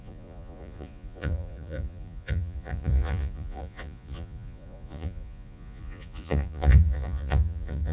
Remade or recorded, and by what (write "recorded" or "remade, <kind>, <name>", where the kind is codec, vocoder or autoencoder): remade, vocoder, Vocos